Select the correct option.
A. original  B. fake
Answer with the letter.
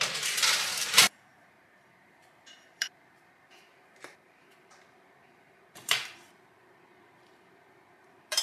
B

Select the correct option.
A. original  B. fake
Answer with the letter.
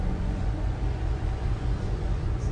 B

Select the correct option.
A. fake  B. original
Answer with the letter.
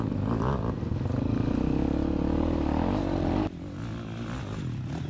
B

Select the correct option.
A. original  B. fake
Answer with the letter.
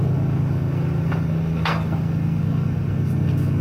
B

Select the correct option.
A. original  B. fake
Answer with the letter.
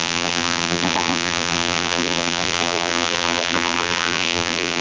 B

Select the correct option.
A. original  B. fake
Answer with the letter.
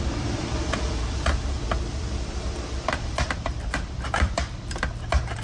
B